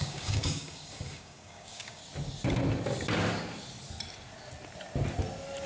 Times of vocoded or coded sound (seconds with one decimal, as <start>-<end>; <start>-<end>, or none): 0.0-2.0